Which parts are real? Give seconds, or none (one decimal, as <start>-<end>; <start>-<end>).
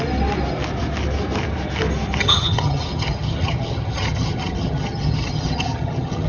0.0-2.2